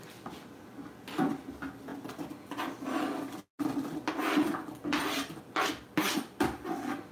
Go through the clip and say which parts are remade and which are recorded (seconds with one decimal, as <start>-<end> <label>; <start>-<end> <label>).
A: 0.0-7.1 recorded